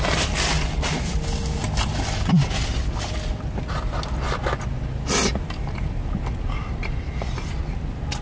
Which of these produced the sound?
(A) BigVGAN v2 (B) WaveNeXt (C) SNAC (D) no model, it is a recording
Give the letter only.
D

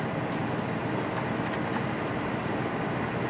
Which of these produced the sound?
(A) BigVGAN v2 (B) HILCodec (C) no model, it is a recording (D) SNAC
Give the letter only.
C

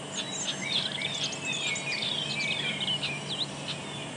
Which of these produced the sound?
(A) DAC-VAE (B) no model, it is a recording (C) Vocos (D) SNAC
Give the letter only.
B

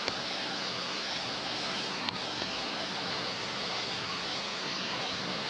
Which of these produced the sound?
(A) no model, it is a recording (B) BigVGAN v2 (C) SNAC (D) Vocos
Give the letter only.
C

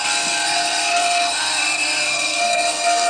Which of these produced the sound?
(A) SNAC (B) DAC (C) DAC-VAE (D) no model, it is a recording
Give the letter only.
A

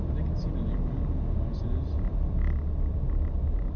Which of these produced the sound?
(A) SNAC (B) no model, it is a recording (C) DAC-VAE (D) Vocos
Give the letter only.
B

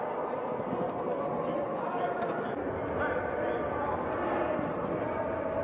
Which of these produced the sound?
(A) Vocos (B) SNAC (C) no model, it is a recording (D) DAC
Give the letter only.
C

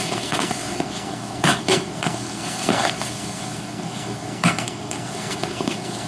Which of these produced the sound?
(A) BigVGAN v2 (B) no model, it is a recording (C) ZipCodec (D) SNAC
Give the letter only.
D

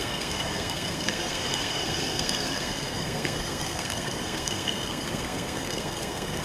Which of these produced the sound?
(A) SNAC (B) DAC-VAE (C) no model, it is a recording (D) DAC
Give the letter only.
A